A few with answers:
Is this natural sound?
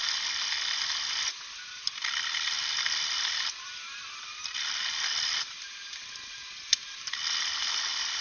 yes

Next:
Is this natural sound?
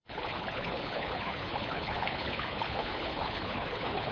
no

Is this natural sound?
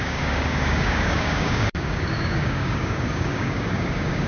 no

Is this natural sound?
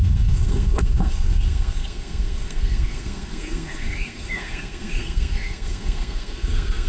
no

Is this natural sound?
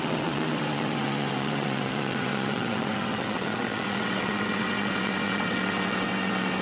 no